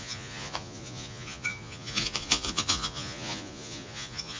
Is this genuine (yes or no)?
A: no